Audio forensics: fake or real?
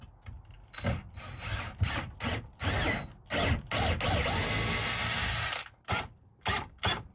real